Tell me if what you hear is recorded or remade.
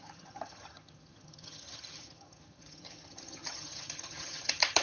remade